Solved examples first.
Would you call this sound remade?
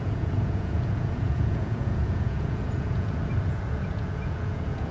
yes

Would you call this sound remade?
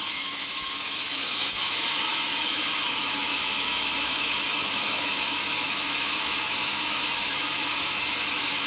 yes